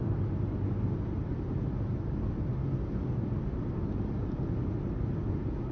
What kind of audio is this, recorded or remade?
recorded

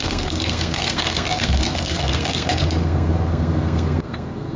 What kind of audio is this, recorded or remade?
remade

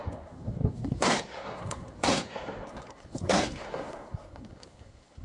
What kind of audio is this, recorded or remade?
remade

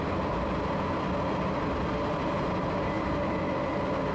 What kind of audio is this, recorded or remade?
recorded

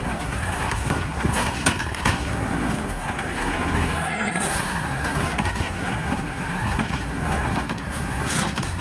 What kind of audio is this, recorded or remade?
remade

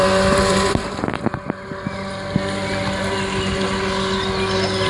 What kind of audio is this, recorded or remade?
recorded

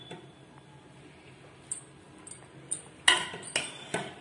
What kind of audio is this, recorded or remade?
recorded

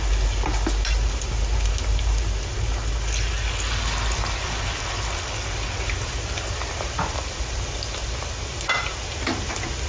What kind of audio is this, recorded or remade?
recorded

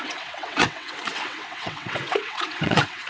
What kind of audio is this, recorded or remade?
remade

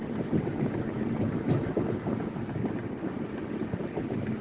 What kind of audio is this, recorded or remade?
recorded